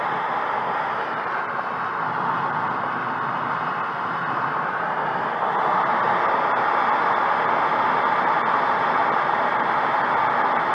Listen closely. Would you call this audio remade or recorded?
recorded